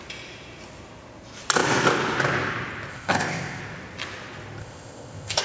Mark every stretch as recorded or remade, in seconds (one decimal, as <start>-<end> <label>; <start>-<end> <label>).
0.0-2.9 recorded; 2.9-3.6 remade; 3.6-4.6 recorded; 4.6-5.4 remade